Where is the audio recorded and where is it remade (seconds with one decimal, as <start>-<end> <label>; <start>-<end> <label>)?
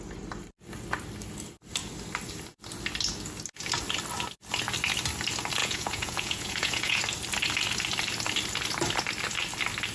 0.0-5.6 recorded; 5.6-7.0 remade; 7.0-9.9 recorded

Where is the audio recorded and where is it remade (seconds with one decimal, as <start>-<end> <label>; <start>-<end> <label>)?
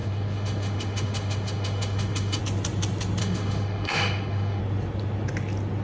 0.0-2.4 remade; 2.4-3.2 recorded; 3.2-4.6 remade; 4.6-5.8 recorded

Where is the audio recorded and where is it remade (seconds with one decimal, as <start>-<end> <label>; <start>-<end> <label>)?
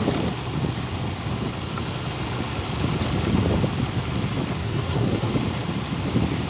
0.0-4.6 recorded; 4.6-5.3 remade; 5.3-6.5 recorded